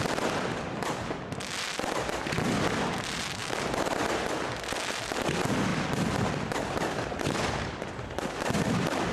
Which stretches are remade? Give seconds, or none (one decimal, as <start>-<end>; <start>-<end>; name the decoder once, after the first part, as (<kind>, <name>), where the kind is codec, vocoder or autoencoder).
none